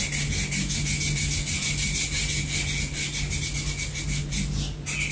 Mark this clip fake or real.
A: real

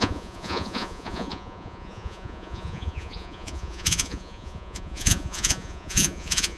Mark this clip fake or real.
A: fake